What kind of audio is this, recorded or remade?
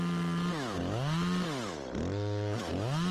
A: recorded